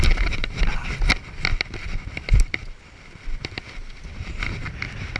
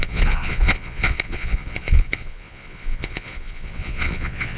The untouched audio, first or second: first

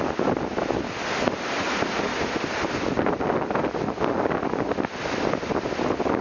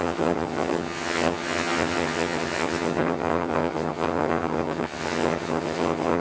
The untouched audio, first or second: first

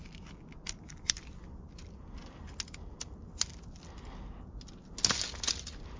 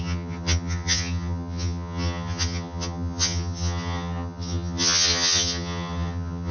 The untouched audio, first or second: first